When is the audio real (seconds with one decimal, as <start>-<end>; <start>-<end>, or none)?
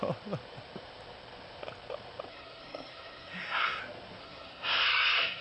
0.0-2.3; 3.8-4.2